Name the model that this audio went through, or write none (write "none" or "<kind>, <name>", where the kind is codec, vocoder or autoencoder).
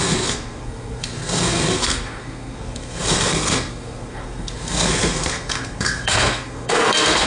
codec, SNAC